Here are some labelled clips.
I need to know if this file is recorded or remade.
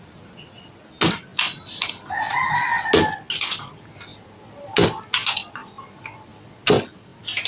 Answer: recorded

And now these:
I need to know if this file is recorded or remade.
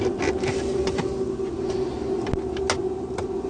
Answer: recorded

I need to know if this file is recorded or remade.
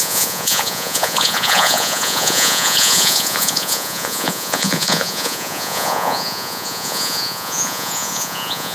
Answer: remade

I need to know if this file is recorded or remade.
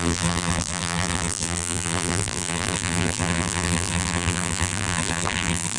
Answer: remade